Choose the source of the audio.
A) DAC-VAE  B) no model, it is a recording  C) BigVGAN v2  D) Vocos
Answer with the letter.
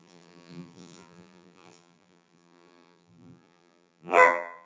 C